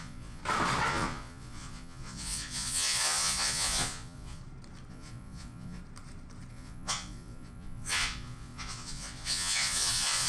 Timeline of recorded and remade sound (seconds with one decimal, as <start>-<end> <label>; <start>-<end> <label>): 0.0-0.4 remade; 0.4-0.9 recorded; 0.9-4.4 remade; 4.4-4.9 recorded; 4.9-5.8 remade; 5.8-6.5 recorded; 6.5-10.3 remade